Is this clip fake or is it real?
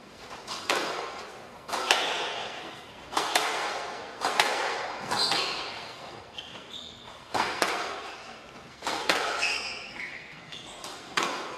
fake